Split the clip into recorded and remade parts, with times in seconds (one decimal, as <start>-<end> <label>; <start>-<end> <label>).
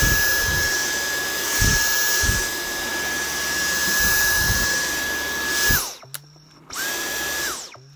0.0-8.0 recorded